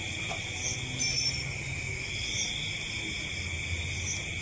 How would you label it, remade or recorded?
recorded